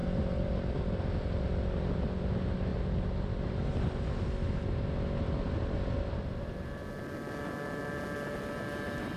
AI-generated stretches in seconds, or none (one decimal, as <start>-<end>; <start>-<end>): none